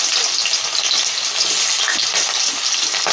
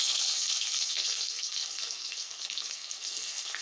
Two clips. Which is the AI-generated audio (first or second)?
second